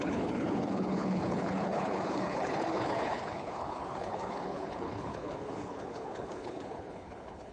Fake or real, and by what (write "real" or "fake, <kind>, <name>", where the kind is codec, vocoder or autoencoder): fake, codec, HILCodec